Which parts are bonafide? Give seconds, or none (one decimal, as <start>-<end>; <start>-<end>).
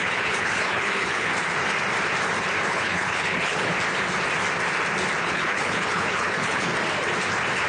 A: 1.3-2.7; 3.7-5.2; 6.7-7.7